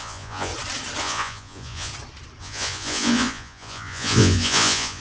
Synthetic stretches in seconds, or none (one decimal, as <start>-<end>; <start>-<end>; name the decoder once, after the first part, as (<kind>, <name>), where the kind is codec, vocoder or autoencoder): 0.0-0.5 (vocoder, Vocos); 1.0-1.9; 2.4-5.0